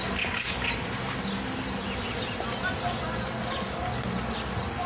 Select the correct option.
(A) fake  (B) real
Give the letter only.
B